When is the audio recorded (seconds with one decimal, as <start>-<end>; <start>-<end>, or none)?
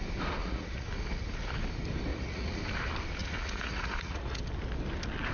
0.0-0.4; 0.9-2.1; 2.6-3.2; 4.4-5.3